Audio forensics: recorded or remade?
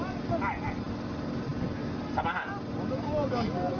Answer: recorded